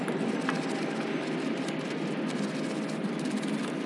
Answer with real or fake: real